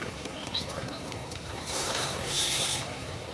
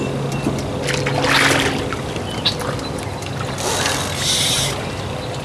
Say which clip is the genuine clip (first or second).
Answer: second